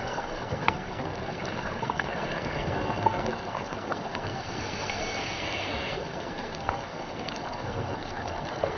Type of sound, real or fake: fake